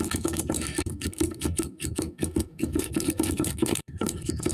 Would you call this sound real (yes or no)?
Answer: no